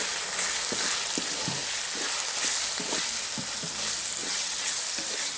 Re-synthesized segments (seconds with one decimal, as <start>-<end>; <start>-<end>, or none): 4.2-4.8